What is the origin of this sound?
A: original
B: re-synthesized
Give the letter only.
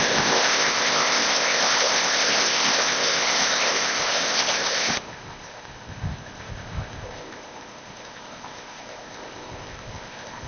B